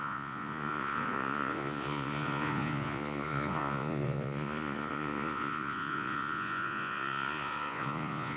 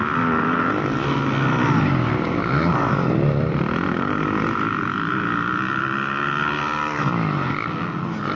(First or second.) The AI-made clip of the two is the first